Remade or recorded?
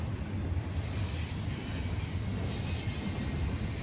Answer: recorded